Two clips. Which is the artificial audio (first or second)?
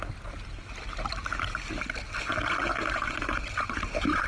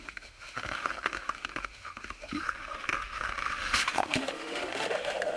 second